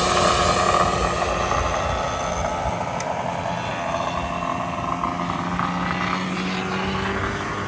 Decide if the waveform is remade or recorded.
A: recorded